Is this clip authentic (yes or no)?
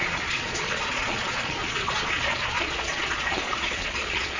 no